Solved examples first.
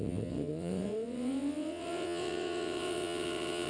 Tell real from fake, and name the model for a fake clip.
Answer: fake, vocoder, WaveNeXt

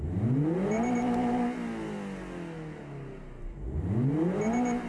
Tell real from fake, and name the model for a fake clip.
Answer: real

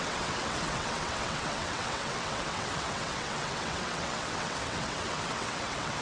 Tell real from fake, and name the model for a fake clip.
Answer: fake, vocoder, WaveNeXt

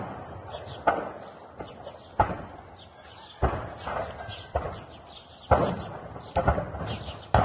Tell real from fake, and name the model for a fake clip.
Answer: real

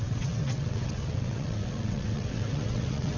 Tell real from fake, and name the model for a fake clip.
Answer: fake, vocoder, WaveNeXt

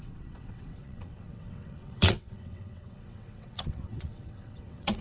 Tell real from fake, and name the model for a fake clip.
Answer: fake, vocoder, WaveNeXt